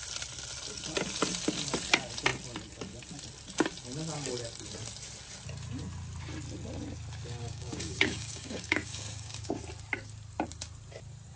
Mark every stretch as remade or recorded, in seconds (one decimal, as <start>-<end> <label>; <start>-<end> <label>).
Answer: 0.0-7.4 recorded; 7.4-9.6 remade; 9.6-11.4 recorded